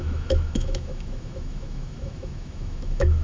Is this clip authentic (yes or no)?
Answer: no